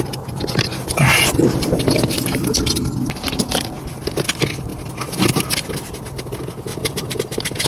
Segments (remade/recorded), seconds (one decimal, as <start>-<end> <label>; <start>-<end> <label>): 0.0-6.7 recorded; 6.7-7.2 remade; 7.2-7.7 recorded